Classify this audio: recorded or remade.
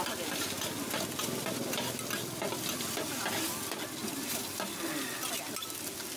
recorded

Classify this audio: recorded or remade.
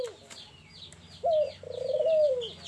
recorded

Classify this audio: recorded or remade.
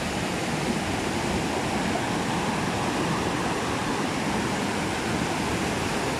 remade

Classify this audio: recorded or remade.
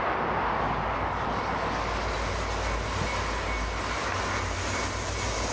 recorded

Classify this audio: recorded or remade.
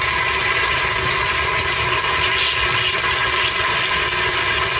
recorded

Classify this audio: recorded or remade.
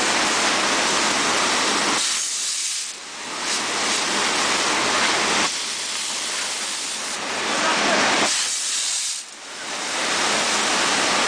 recorded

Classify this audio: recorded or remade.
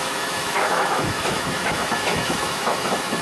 remade